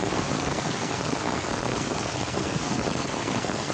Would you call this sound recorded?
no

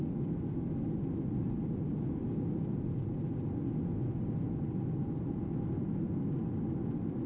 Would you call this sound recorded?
yes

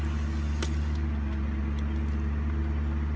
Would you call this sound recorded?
yes